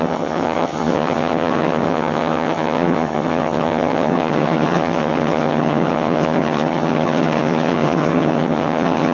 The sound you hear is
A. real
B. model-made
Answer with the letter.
B